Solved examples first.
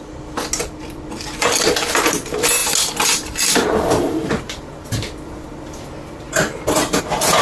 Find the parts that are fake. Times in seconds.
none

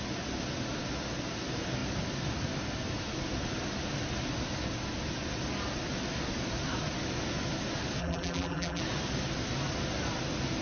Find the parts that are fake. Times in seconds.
8.0-8.8 (vocoder, BigVGAN v2)

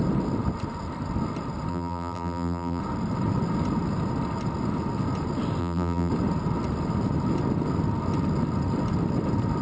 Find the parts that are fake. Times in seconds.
1.7-2.8 (vocoder, BigVGAN v2); 5.6-6.1